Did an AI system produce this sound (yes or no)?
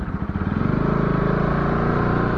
no